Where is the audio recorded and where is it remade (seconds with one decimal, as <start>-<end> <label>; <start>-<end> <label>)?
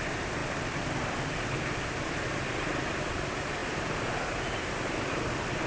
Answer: 0.0-5.7 recorded